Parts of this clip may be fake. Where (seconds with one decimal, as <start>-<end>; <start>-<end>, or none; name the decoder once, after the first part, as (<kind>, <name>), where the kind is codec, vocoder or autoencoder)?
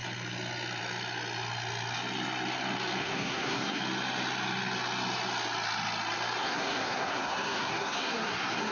3.0-3.8 (codec, SNAC); 6.4-8.7